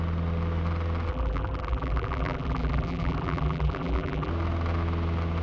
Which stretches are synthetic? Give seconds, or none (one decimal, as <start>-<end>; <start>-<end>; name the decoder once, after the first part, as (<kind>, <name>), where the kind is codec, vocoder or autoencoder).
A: 1.1-4.3 (vocoder, BigVGAN v2)